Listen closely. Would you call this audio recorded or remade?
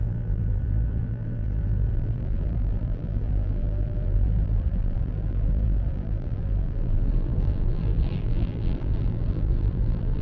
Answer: remade